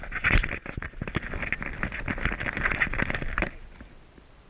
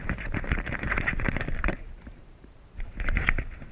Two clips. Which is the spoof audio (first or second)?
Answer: second